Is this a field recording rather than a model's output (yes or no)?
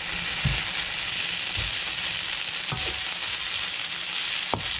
yes